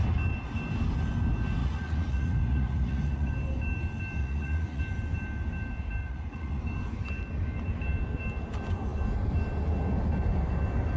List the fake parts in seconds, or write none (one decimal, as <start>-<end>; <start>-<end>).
1.6-3.3; 4.2-4.8; 6.0-6.6